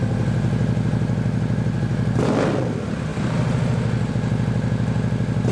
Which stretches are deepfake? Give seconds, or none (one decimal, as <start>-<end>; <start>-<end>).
3.1-4.1